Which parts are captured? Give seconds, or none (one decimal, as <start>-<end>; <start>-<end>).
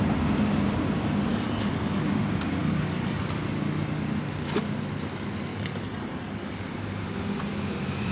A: 0.0-1.3; 2.0-2.6; 3.2-5.5; 6.6-8.1